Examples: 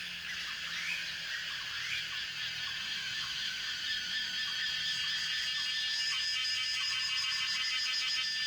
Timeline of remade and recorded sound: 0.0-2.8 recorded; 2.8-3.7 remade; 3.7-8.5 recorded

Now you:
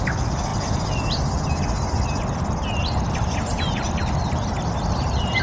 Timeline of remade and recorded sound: 0.0-5.4 recorded

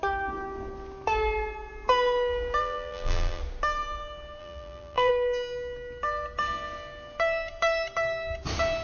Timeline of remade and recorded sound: 0.0-2.6 recorded; 2.6-3.4 remade; 3.4-4.4 recorded; 4.4-5.1 remade; 5.1-8.8 recorded

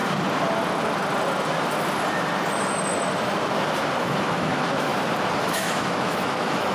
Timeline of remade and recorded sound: 0.0-4.0 recorded; 4.0-4.9 remade; 4.9-5.4 recorded; 5.4-6.7 remade

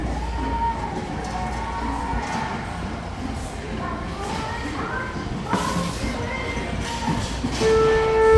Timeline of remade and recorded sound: 0.0-8.4 recorded

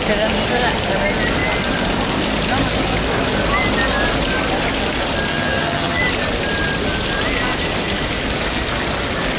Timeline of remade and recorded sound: 0.0-5.3 recorded; 5.3-6.0 remade; 6.0-9.4 recorded